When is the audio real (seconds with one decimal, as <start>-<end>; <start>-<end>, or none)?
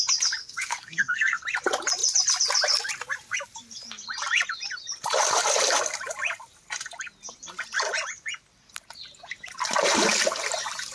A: 0.0-0.4; 1.4-10.9